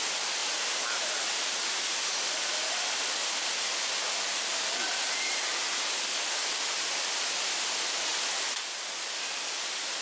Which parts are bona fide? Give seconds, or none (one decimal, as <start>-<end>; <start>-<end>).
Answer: 0.0-10.0